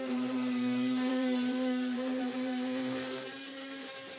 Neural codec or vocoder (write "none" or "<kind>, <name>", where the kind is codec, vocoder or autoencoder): vocoder, BigVGAN v2